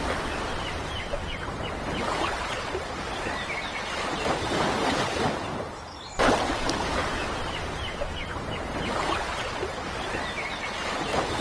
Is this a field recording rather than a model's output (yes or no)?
yes